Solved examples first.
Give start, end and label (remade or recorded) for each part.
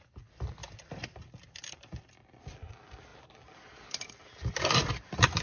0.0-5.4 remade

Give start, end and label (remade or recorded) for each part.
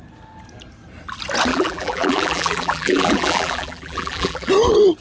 0.0-1.5 recorded; 1.5-4.5 remade; 4.5-5.0 recorded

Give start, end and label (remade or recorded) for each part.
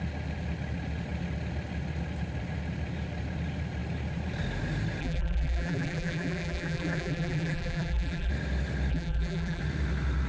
0.0-5.0 recorded; 5.0-8.3 remade; 8.3-8.9 recorded; 8.9-9.6 remade; 9.6-10.3 recorded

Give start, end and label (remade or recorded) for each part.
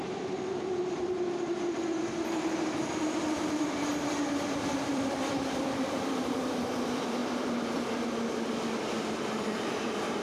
0.0-3.9 remade; 3.9-4.9 recorded; 4.9-7.2 remade; 7.2-9.6 recorded; 9.6-10.2 remade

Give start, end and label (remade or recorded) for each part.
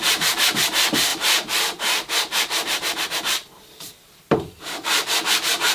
0.0-5.7 remade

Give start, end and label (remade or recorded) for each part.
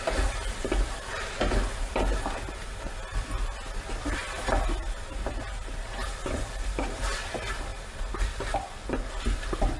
0.0-9.8 recorded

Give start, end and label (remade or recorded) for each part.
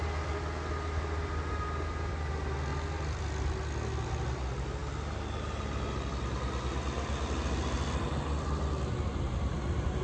0.0-2.7 recorded; 2.7-3.2 remade; 3.2-10.0 recorded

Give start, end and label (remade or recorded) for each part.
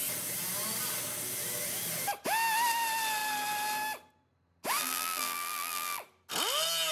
0.0-4.8 recorded; 4.8-6.0 remade; 6.0-6.9 recorded